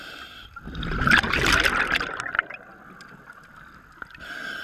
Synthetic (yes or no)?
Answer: no